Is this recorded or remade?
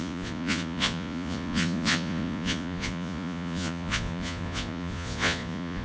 remade